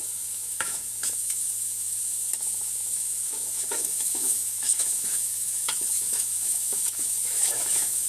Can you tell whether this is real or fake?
fake